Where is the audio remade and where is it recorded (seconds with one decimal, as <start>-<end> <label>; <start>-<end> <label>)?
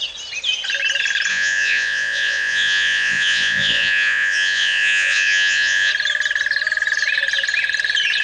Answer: 0.0-1.3 recorded; 1.3-5.9 remade; 5.9-8.2 recorded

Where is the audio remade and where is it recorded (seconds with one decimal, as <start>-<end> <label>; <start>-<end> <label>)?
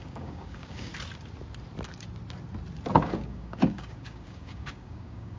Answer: 0.0-0.9 remade; 0.9-2.9 recorded; 2.9-5.4 remade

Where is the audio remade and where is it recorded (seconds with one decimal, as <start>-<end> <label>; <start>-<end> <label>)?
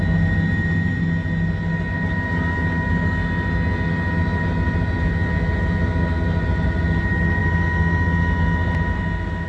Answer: 0.0-9.5 recorded